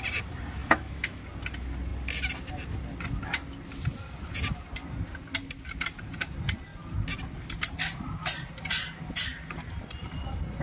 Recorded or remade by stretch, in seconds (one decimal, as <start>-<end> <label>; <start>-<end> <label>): 0.0-0.6 recorded; 0.6-1.2 remade; 1.2-10.6 recorded